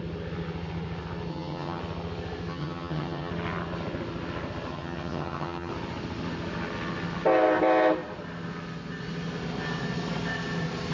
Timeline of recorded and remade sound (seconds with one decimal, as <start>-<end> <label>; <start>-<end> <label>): 0.0-1.3 recorded; 1.3-1.8 remade; 1.8-2.5 recorded; 2.5-3.3 remade; 3.3-4.7 recorded; 4.7-5.7 remade; 5.7-10.9 recorded

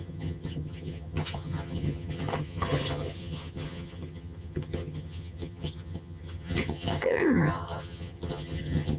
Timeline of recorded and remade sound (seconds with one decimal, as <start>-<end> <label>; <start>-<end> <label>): 0.0-9.0 remade

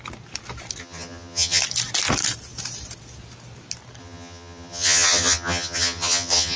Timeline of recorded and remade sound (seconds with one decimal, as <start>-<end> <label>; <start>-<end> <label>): 0.0-0.8 recorded; 0.8-1.6 remade; 1.6-4.0 recorded; 4.0-6.6 remade

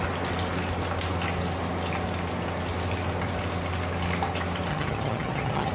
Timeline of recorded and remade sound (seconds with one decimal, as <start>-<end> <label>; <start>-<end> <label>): 0.0-4.7 recorded; 4.7-5.7 remade

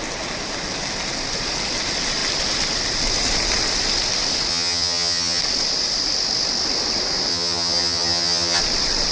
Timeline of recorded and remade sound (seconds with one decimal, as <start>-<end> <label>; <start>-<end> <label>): 0.0-4.5 recorded; 4.5-5.4 remade; 5.4-7.3 recorded; 7.3-8.6 remade; 8.6-9.1 recorded

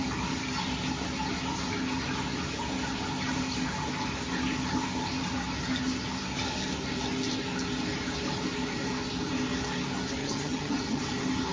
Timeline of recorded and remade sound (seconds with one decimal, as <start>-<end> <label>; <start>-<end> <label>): 0.0-10.2 recorded; 10.2-11.0 remade; 11.0-11.5 recorded

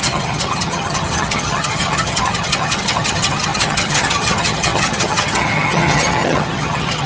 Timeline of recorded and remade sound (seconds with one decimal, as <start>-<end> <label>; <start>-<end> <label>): 0.0-7.1 remade